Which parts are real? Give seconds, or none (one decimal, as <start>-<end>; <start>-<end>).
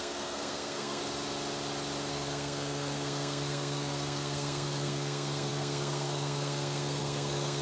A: 1.0-2.1